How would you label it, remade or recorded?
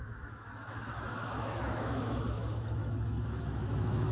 remade